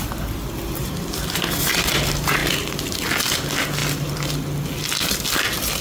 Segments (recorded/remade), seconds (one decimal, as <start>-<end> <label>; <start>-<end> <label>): 0.0-5.8 recorded